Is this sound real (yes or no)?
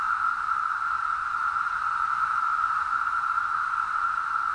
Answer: yes